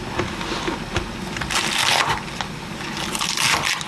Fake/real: real